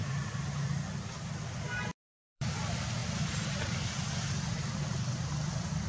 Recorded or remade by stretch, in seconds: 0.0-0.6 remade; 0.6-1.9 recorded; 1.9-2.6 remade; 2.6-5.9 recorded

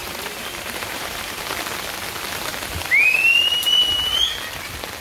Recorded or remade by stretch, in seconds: 0.0-1.4 remade; 1.4-5.0 recorded